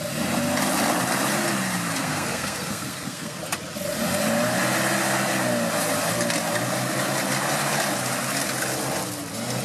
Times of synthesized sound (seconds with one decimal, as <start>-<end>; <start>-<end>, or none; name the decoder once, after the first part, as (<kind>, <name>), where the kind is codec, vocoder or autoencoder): 2.0-3.4 (codec, SNAC)

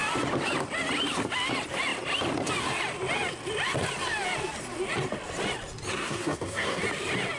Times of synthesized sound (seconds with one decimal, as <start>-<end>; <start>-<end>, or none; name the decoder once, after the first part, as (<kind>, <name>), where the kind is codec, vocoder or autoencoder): 5.9-6.8 (codec, SNAC)

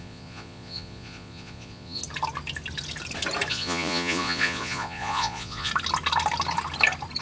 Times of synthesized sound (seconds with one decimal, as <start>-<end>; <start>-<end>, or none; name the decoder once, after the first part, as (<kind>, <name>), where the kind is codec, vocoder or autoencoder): 0.0-2.0 (vocoder, Vocos); 3.5-5.7

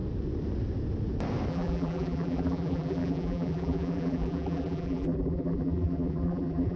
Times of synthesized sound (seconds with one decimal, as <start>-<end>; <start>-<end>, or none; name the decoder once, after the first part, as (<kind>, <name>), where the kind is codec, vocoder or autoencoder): 1.5-6.8 (vocoder, BigVGAN v2)

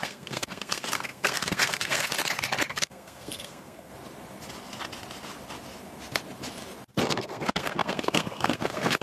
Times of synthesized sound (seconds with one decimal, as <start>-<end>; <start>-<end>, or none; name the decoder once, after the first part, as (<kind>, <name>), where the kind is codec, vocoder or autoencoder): 0.0-2.1 (codec, SNAC); 2.7-3.9; 7.0-9.0

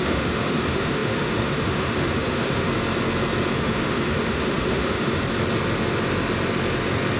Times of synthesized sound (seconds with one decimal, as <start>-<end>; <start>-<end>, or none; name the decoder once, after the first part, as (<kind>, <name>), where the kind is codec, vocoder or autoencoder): 0.0-2.7 (autoencoder, DAC-VAE); 3.6-5.2

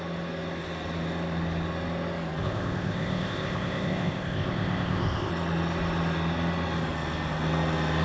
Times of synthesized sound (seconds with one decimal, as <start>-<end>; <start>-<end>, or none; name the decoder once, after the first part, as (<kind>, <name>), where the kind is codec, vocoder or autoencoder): 2.4-5.3 (codec, ZipCodec)